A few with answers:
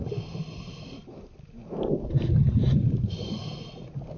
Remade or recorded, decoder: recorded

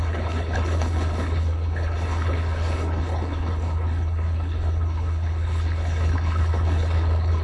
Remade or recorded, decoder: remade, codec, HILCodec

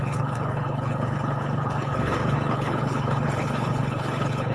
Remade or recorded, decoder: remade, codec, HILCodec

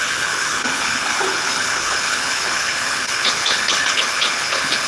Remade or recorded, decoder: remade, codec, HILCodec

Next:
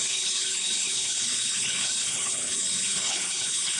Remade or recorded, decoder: remade, codec, HILCodec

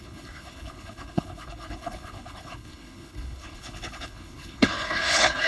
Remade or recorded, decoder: remade, codec, HILCodec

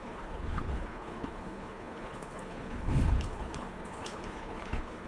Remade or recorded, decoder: remade, codec, HILCodec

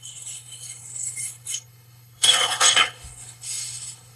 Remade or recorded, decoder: remade, codec, HILCodec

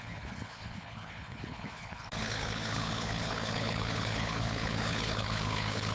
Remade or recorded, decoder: remade, codec, HILCodec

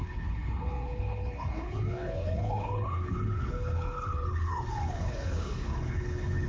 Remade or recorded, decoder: remade, codec, HILCodec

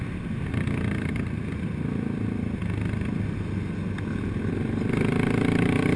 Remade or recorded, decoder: recorded